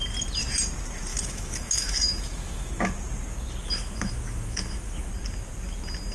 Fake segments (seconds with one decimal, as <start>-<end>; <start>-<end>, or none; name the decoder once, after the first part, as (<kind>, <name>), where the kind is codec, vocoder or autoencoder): 1.1-2.9 (autoencoder, DAC-VAE); 3.6-5.1